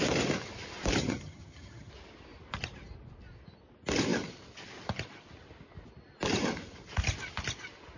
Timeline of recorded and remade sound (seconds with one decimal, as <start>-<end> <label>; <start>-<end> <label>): 0.0-1.0 recorded; 1.0-1.9 remade; 1.9-8.0 recorded